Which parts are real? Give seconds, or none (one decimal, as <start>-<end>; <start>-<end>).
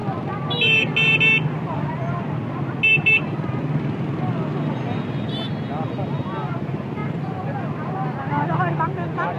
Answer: 0.0-2.9; 3.5-9.4